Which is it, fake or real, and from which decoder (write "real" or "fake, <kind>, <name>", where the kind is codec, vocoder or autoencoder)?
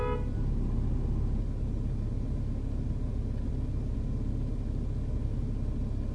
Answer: real